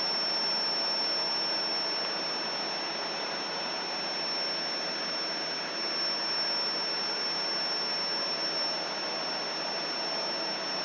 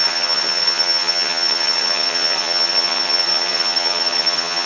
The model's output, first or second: second